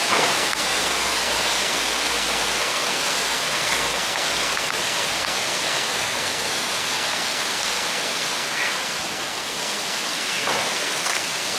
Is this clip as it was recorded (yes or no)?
no